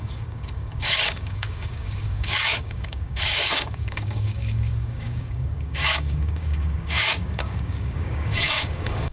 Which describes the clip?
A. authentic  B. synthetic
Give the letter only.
B